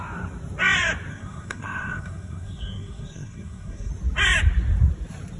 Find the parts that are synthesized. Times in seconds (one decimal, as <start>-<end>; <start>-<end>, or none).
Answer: 1.1-3.9